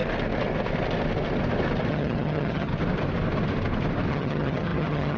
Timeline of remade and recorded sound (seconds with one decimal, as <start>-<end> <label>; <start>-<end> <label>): 0.0-1.9 recorded; 1.9-2.7 remade; 2.7-4.1 recorded; 4.1-5.2 remade

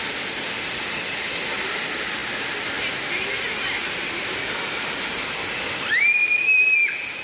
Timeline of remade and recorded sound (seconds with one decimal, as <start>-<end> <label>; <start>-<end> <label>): 0.0-7.2 recorded

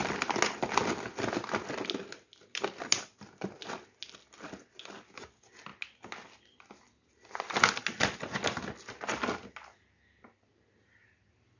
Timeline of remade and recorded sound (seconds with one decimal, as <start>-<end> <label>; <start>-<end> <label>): 0.0-11.6 recorded

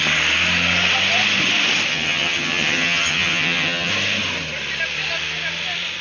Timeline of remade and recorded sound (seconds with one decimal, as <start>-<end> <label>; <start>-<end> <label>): 0.0-1.9 recorded; 1.9-3.9 remade; 3.9-6.0 recorded

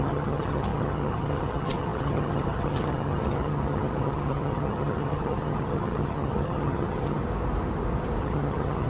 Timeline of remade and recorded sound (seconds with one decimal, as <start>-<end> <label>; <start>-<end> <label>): 0.0-7.2 remade; 7.2-8.2 recorded; 8.2-8.9 remade

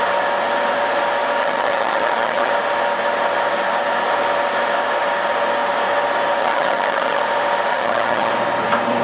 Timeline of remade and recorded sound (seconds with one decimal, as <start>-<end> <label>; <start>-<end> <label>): 0.0-1.4 recorded; 1.4-2.5 remade; 2.5-6.4 recorded; 6.4-7.2 remade; 7.2-7.7 recorded; 7.7-8.3 remade; 8.3-9.0 recorded